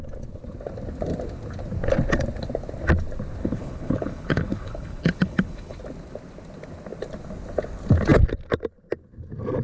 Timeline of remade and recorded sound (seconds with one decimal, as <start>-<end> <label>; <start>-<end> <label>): 0.0-3.4 recorded; 3.4-5.8 remade; 5.8-9.6 recorded

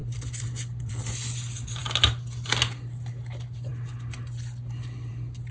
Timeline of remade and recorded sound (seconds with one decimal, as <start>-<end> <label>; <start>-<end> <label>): 0.0-5.5 recorded

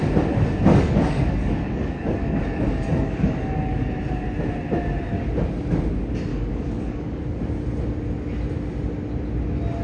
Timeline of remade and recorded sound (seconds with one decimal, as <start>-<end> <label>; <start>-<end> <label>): 0.0-0.7 recorded; 0.7-3.9 remade; 3.9-6.3 recorded; 6.3-7.2 remade; 7.2-9.8 recorded